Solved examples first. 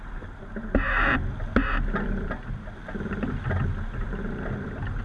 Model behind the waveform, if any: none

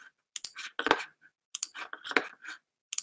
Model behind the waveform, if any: none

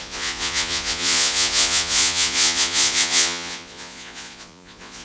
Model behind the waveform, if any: vocoder, Vocos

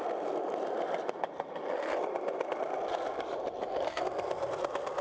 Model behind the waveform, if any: none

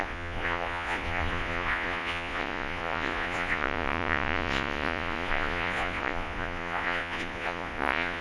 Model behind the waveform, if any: vocoder, Vocos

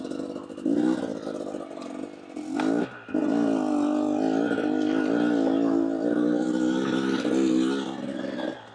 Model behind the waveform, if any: none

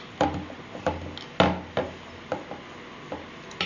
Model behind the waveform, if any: none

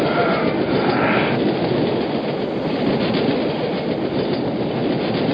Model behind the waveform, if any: none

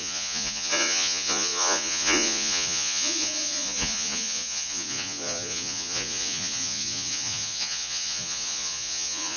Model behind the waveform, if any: vocoder, Vocos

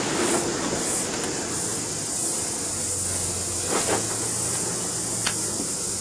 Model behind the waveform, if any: none